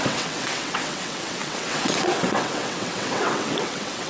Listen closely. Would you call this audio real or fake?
fake